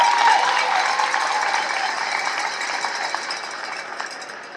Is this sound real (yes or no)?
no